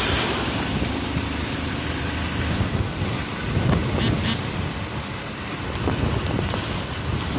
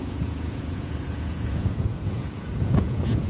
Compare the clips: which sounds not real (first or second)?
second